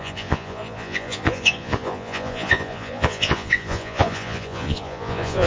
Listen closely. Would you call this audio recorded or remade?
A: remade